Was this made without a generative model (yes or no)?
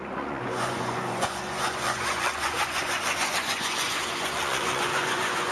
no